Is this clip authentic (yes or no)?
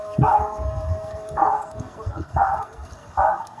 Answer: no